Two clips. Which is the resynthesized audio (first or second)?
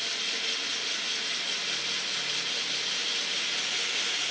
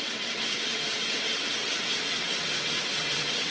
second